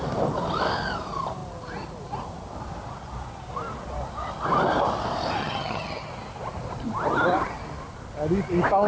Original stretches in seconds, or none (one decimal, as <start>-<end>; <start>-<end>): 0.0-5.4; 6.1-8.9